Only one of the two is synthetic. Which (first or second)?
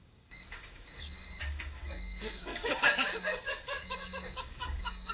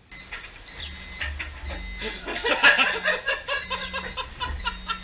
first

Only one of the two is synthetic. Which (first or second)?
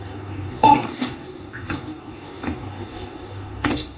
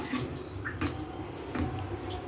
first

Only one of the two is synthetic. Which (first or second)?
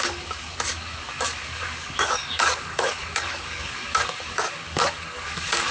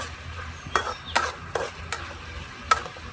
first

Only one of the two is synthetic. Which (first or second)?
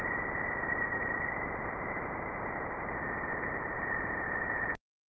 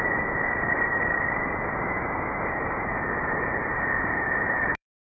second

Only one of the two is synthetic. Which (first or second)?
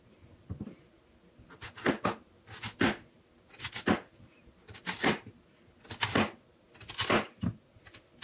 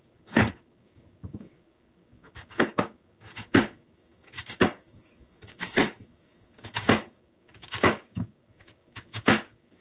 second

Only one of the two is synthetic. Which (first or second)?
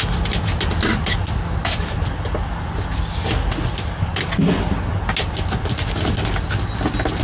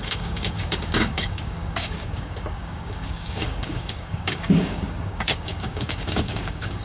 second